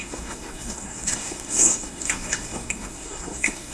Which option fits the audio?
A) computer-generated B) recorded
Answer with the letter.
A